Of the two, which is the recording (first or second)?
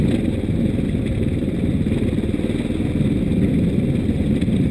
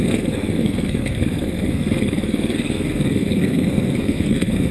first